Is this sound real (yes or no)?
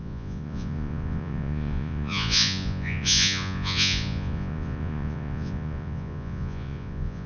no